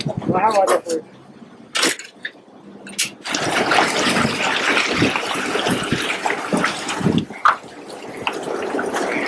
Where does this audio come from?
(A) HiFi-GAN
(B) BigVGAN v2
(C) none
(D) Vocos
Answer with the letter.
C